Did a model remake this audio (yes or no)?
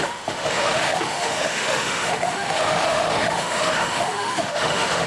yes